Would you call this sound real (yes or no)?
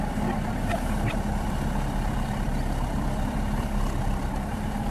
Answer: no